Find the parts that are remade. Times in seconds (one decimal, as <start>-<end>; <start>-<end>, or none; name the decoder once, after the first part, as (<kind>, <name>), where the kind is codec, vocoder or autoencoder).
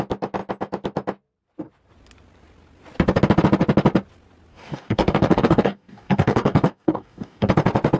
4.5-7.5 (codec, DAC)